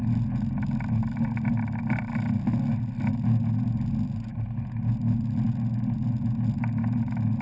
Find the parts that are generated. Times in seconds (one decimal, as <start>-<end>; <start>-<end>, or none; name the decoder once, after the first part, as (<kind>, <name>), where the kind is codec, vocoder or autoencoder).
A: none